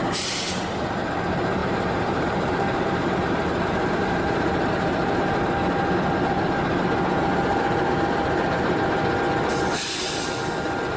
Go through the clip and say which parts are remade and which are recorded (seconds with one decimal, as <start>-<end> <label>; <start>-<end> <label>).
0.0-1.6 recorded; 1.6-5.4 remade; 5.4-7.5 recorded; 7.5-8.7 remade; 8.7-11.0 recorded